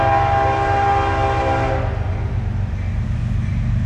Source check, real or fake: real